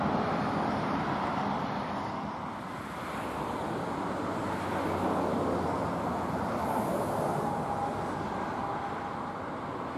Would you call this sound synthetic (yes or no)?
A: no